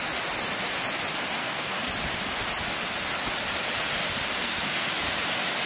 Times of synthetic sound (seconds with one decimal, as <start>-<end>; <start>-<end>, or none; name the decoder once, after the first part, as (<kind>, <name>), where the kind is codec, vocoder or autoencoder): 1.4-1.9 (codec, SNAC); 4.4-4.9